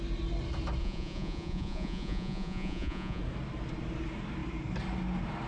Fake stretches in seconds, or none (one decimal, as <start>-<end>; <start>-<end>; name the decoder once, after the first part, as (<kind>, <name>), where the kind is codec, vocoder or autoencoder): 0.8-3.2 (vocoder, Vocos)